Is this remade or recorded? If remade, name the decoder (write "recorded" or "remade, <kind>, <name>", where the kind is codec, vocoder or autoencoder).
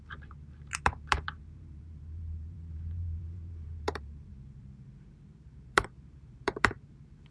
remade, vocoder, BigVGAN v2